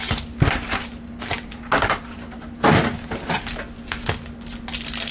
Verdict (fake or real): real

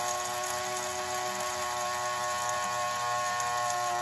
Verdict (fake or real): real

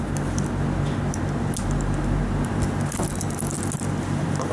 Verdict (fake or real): real